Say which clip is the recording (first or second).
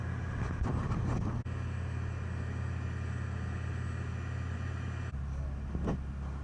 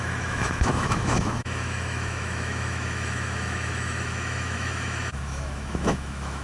first